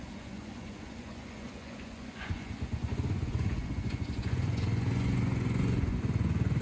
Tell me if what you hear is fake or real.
fake